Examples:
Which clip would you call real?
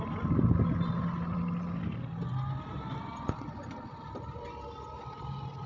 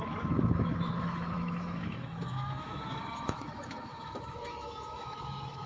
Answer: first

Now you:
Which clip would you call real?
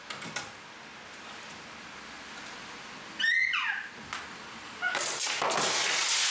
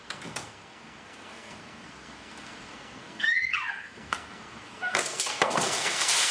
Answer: first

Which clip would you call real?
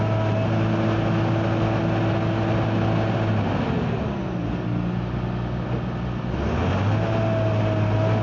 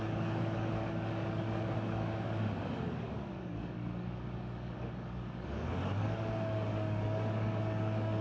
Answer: first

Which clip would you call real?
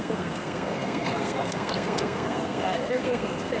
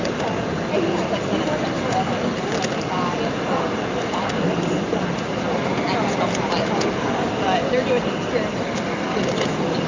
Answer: second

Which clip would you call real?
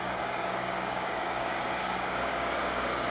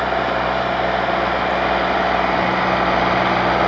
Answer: second